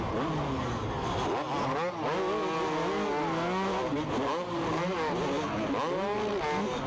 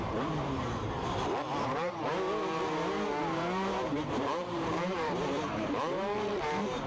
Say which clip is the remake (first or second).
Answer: second